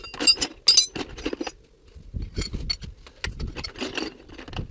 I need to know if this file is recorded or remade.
recorded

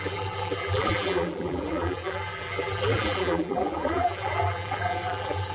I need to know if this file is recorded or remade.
remade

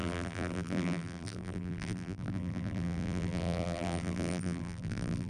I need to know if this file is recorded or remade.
remade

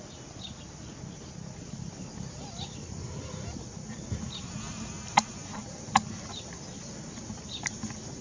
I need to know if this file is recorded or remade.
recorded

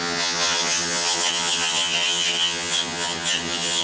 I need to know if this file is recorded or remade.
remade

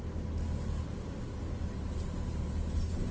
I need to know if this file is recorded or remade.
recorded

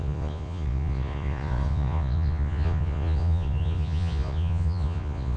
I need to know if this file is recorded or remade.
remade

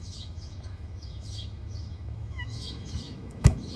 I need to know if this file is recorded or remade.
remade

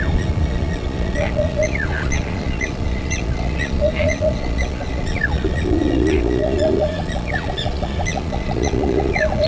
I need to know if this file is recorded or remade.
remade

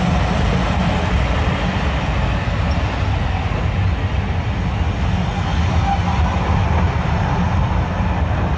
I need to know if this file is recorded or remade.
recorded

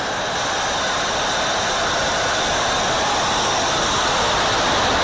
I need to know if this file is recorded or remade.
recorded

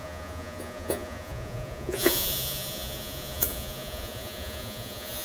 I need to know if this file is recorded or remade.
remade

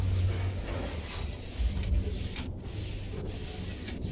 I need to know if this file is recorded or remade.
recorded